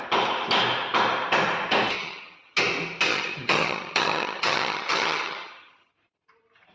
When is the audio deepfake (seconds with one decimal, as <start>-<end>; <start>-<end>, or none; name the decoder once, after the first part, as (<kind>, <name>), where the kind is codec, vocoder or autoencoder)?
2.0-2.6 (vocoder, HiFi-GAN); 3.1-5.9